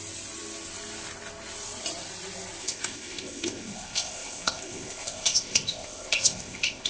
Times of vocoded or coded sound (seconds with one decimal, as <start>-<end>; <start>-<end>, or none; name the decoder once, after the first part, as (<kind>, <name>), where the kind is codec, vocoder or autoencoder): 2.6-6.9 (codec, ZipCodec)